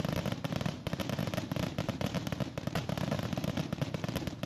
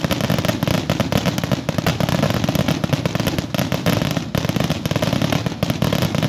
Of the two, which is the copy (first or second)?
first